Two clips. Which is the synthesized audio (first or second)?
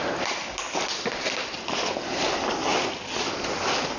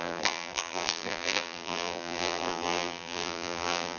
second